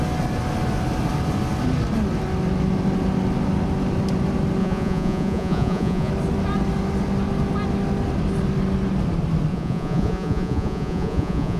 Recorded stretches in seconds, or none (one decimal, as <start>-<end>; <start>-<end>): 0.0-4.6; 6.1-9.5